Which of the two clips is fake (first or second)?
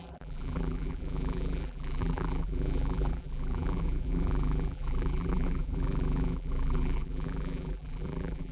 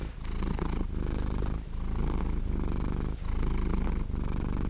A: first